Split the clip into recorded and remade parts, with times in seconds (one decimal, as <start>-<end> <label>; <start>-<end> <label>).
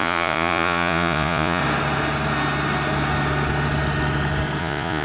0.0-1.6 remade; 1.6-4.6 recorded; 4.6-5.0 remade